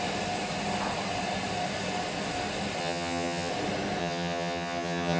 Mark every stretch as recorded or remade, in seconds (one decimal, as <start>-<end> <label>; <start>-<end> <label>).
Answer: 0.0-2.8 recorded; 2.8-3.5 remade; 3.5-4.0 recorded; 4.0-5.2 remade